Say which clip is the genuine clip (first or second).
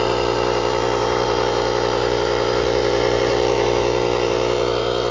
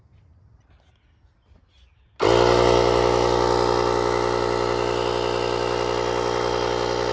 second